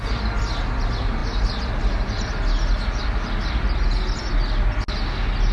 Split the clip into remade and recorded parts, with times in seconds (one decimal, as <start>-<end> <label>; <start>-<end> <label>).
0.0-5.5 recorded